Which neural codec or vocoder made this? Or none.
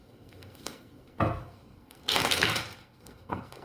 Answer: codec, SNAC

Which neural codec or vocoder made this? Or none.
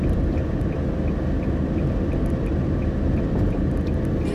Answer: none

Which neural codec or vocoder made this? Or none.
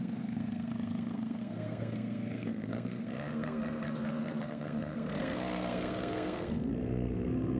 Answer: codec, SNAC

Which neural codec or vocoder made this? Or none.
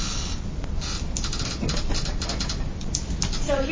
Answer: none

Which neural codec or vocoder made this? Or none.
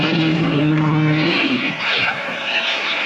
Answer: codec, SNAC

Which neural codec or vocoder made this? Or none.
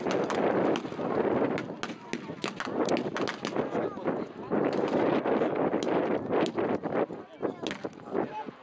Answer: none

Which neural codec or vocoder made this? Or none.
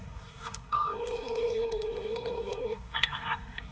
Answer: codec, SNAC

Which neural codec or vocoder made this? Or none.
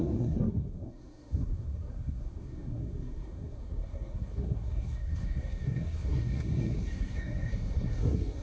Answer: codec, SNAC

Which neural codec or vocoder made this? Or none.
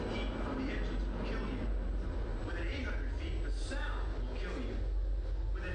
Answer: none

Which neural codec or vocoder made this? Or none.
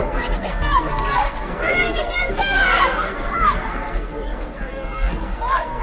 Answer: codec, SNAC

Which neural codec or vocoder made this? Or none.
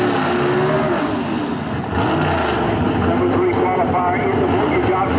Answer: none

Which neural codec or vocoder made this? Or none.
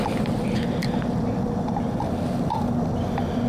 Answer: none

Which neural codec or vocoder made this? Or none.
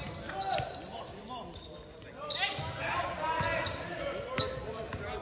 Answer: none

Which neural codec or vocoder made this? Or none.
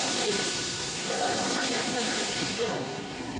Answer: codec, SNAC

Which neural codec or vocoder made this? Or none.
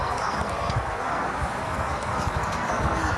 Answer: codec, SNAC